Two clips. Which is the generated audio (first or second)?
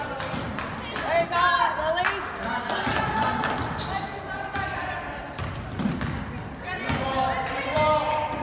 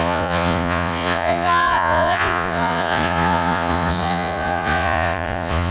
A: second